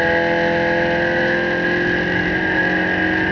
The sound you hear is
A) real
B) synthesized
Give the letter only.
A